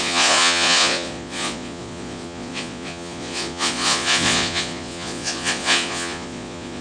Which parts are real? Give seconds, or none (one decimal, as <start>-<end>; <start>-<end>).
none